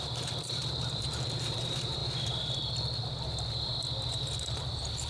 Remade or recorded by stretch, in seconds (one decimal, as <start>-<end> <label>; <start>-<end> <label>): 0.0-2.0 remade; 2.0-4.1 recorded; 4.1-5.1 remade